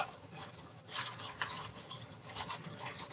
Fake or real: fake